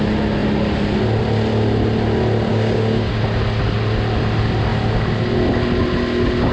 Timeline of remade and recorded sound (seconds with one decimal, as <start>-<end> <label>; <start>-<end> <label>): 0.0-2.5 recorded; 2.5-3.1 remade; 3.1-6.5 recorded